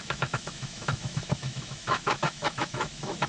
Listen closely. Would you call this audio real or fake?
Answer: fake